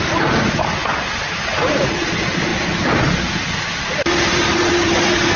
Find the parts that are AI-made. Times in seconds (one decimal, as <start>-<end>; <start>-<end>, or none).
none